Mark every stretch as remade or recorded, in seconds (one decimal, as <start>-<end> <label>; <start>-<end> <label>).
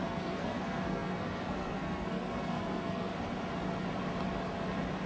0.0-3.1 remade; 3.1-5.1 recorded